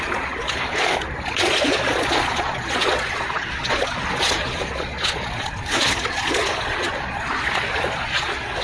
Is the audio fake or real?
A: fake